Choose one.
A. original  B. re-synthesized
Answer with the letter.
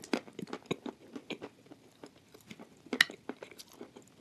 A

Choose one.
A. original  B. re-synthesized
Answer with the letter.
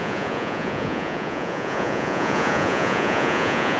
B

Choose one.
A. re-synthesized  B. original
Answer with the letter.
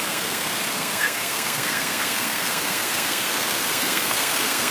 A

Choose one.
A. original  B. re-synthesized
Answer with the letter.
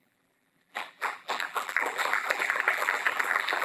B